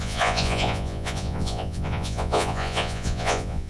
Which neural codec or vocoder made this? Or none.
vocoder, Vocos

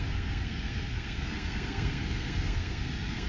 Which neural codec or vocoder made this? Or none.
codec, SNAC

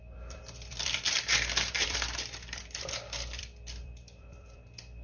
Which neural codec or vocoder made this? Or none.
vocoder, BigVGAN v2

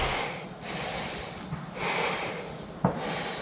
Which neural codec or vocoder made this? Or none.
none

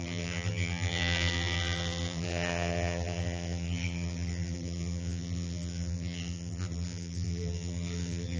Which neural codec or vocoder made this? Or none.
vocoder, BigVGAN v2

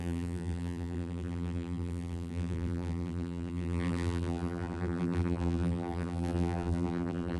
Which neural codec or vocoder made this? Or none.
vocoder, BigVGAN v2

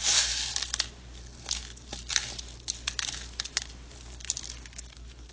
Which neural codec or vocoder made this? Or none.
none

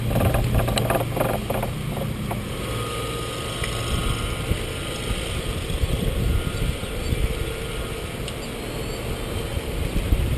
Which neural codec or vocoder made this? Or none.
none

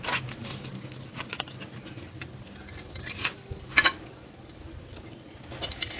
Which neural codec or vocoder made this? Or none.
none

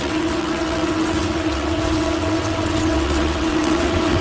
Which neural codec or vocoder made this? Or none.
vocoder, WaveNeXt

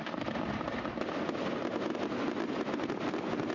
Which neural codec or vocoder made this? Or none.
none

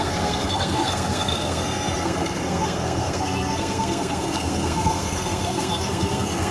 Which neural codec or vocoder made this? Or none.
codec, SNAC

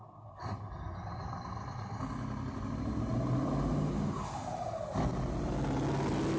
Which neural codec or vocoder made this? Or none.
none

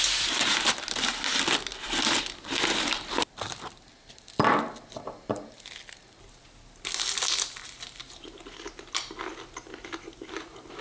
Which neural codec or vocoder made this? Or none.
none